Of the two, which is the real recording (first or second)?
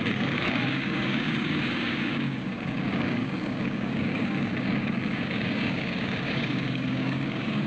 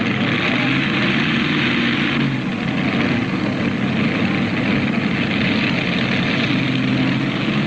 second